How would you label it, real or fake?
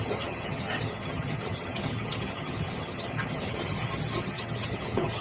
fake